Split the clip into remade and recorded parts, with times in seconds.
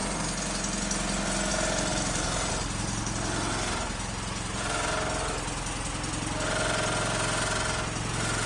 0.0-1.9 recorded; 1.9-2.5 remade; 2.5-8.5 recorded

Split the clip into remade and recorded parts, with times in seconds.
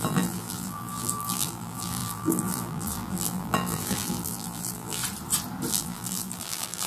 0.0-5.0 remade; 5.0-5.7 recorded; 5.7-6.9 remade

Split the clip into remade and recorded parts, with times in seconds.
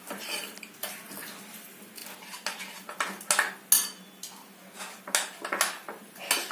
0.0-6.5 recorded